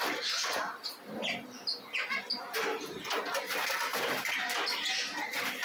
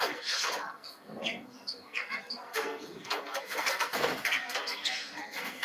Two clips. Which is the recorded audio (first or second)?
first